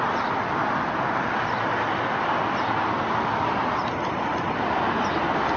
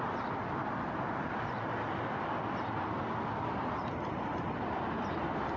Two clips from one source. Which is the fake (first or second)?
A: second